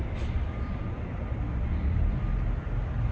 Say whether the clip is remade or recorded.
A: remade